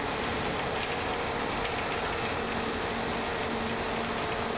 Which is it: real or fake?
real